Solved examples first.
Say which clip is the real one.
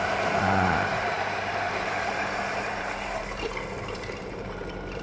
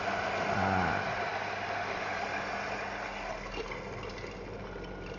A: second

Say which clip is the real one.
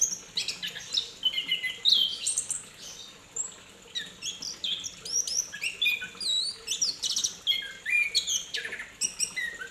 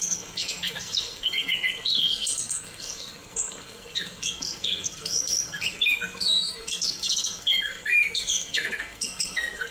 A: first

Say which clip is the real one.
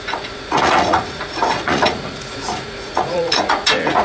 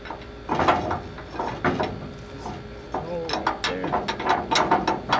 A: second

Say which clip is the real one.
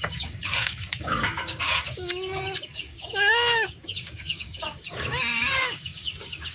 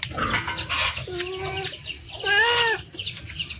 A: second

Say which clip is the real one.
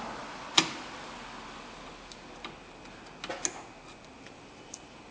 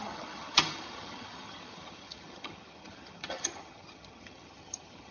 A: first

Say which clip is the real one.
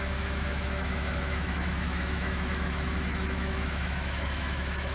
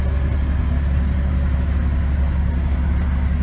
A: second